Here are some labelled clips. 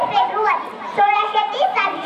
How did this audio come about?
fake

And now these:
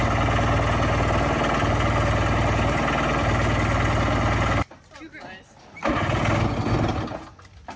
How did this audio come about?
real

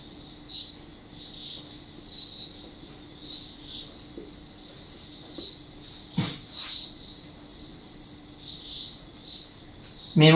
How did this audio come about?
real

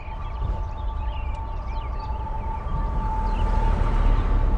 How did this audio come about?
real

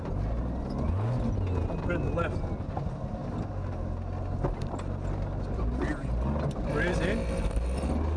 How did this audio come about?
real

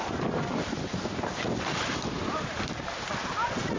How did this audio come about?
real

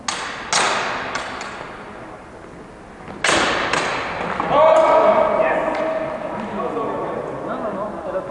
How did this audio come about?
real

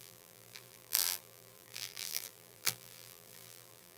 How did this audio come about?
fake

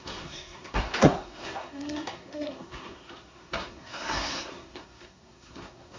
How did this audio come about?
fake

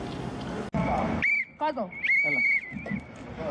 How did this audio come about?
real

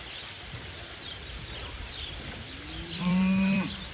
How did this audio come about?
fake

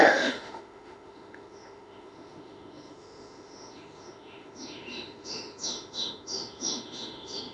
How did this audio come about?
fake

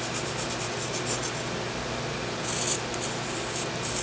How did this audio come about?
real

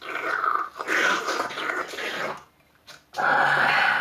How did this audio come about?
real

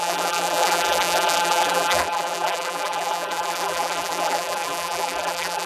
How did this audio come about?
fake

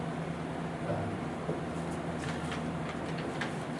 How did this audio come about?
real